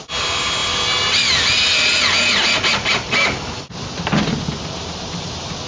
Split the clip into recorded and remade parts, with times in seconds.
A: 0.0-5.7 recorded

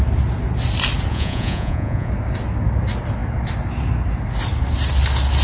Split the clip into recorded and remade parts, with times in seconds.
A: 0.0-1.1 recorded; 1.1-2.1 remade; 2.1-5.4 recorded

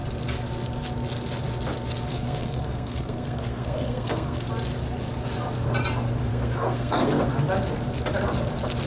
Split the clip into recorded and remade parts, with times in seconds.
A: 0.0-2.1 recorded; 2.1-4.5 remade; 4.5-6.3 recorded; 6.3-7.3 remade; 7.3-8.9 recorded

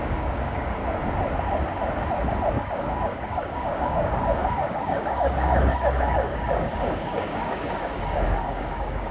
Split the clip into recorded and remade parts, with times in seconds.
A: 0.0-0.8 remade; 0.8-2.5 recorded; 2.5-9.1 remade

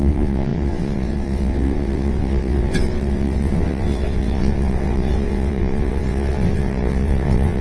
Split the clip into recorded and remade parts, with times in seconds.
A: 0.0-7.6 remade

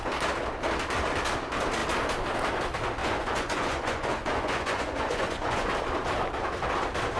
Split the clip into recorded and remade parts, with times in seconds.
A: 0.0-3.0 recorded; 3.0-5.7 remade; 5.7-7.2 recorded

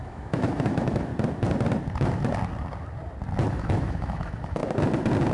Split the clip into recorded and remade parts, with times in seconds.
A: 0.0-1.1 remade; 1.1-3.5 recorded; 3.5-4.6 remade; 4.6-5.3 recorded

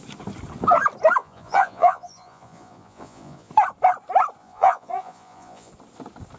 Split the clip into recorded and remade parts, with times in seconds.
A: 0.0-1.2 recorded; 1.2-3.5 remade; 3.5-4.4 recorded; 4.4-5.7 remade; 5.7-6.4 recorded